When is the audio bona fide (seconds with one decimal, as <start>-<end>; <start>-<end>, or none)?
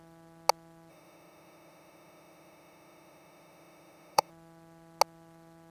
0.0-0.9; 4.3-5.7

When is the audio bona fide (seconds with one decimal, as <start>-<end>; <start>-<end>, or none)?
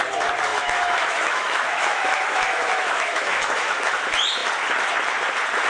0.0-0.5; 3.9-5.7